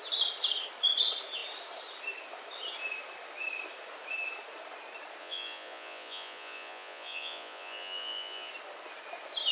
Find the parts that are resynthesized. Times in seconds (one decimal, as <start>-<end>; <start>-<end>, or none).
5.2-8.5